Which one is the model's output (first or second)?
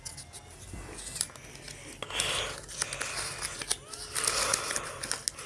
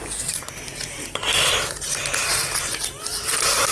second